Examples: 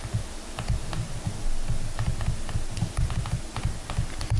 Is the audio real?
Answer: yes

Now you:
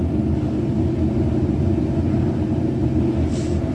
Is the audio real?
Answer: yes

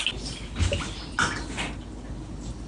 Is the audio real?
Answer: yes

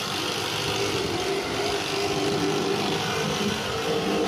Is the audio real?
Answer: yes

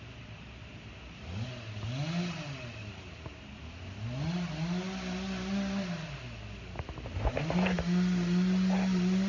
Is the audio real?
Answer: yes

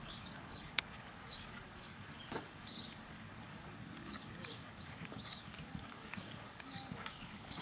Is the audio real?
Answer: no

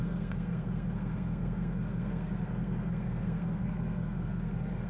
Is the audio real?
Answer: no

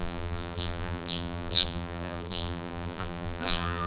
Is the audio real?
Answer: no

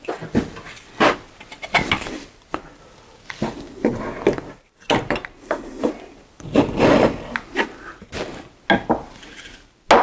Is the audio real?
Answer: yes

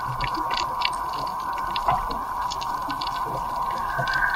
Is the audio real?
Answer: yes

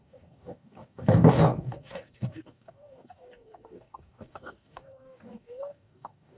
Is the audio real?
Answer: no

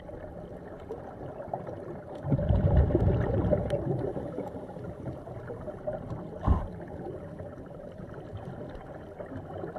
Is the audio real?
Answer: no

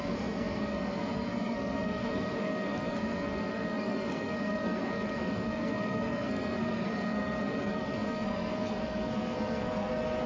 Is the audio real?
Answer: no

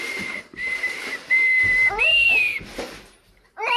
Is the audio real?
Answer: no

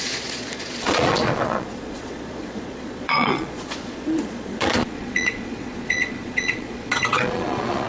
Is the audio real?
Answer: no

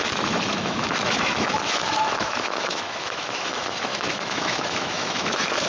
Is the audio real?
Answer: no